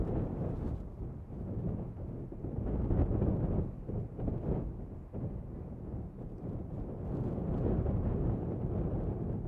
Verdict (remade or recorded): recorded